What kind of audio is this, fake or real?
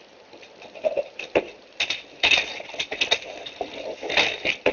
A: real